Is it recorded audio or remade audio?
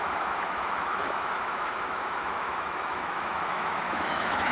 remade